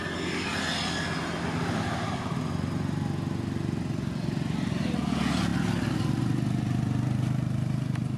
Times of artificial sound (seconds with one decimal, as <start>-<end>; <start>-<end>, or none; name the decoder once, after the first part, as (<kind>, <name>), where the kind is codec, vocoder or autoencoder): none